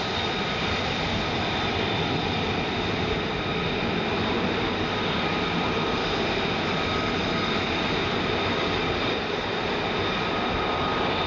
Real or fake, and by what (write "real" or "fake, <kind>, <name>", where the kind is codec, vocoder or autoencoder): real